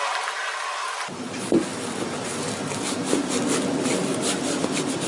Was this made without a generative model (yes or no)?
yes